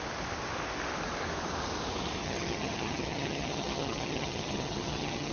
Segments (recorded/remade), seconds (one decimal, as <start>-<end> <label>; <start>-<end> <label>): 0.0-2.2 recorded; 2.2-5.3 remade